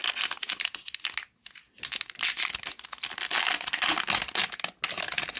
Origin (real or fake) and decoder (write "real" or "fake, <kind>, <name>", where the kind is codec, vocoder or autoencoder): real